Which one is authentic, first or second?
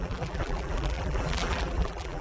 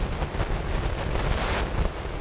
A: second